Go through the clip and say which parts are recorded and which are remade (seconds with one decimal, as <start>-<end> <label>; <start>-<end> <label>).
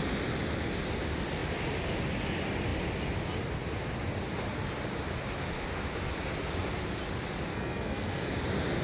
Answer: 0.0-7.5 recorded; 7.5-8.3 remade; 8.3-8.8 recorded